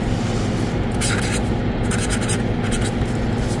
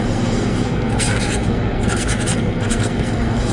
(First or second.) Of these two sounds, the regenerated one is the second